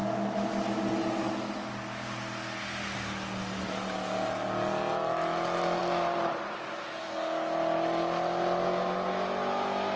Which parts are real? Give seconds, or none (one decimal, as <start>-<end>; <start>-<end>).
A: 0.0-10.0